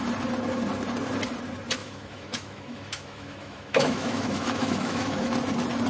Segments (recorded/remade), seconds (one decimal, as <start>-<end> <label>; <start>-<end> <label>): 0.0-1.8 recorded; 1.8-5.3 remade; 5.3-5.9 recorded